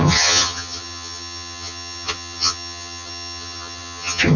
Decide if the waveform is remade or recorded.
remade